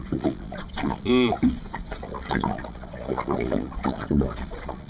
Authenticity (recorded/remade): remade